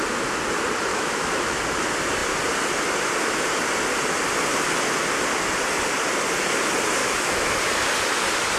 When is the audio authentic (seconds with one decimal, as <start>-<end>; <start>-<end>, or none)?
0.0-0.9; 1.6-7.0; 7.6-8.6